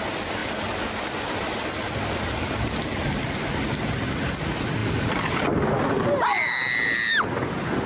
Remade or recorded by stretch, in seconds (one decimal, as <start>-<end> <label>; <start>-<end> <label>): 0.0-4.8 recorded; 4.8-5.8 remade; 5.8-7.9 recorded